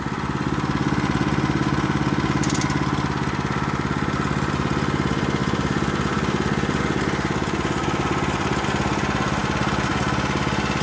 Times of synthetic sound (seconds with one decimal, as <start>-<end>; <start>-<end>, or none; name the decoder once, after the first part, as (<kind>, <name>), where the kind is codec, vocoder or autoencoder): none